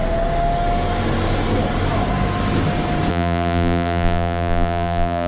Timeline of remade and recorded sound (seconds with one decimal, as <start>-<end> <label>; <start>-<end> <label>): 0.0-3.1 recorded; 3.1-5.3 remade